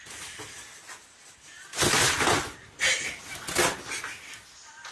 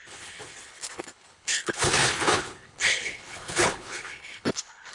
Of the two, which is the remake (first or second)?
second